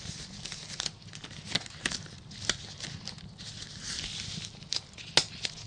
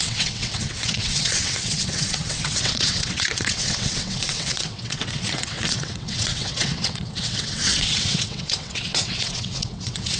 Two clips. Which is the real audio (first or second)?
first